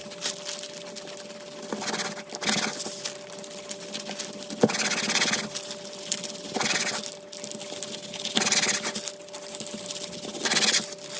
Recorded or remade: recorded